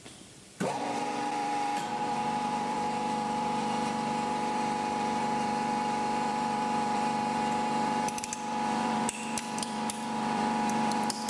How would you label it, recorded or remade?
remade